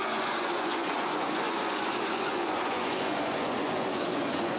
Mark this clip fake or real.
fake